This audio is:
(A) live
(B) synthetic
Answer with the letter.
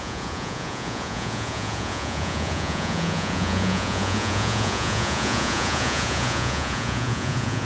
B